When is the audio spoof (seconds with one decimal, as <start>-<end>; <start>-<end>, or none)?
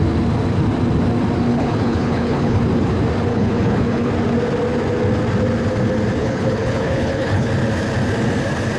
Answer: 1.5-2.6; 3.3-4.1; 6.2-7.5